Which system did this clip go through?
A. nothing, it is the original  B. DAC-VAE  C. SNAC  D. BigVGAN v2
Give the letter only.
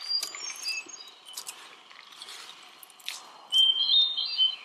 D